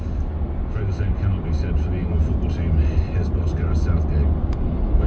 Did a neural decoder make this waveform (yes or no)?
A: no